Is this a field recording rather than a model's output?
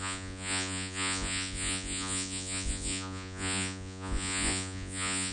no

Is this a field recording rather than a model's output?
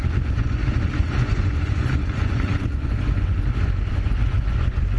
no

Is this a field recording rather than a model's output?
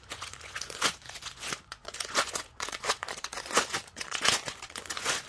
no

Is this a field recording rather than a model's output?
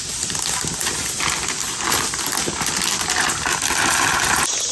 yes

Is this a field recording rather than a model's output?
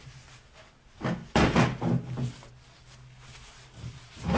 yes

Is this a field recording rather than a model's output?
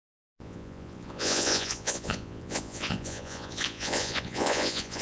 no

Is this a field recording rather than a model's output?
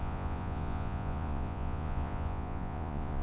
no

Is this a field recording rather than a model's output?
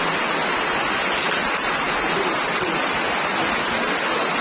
yes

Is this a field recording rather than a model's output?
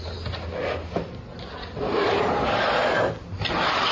yes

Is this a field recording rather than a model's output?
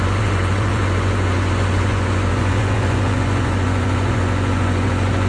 no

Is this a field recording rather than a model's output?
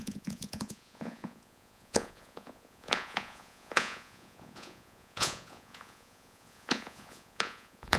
no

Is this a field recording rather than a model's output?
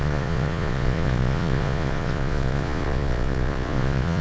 no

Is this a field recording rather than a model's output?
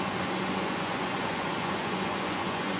no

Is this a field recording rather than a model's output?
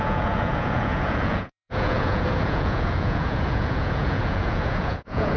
no